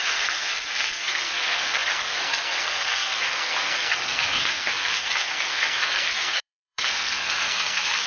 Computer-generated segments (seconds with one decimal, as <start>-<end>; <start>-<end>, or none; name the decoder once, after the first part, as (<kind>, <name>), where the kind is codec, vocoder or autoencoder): 0.0-8.1 (codec, SNAC)